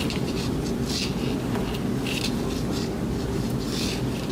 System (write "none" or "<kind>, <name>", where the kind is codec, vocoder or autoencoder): none